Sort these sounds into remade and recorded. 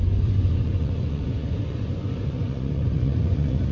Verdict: remade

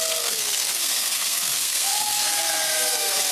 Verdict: remade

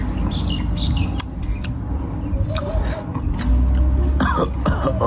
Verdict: recorded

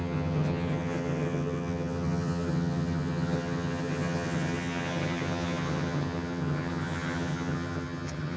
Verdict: remade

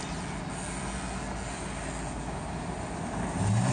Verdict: recorded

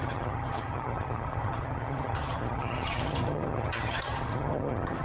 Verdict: remade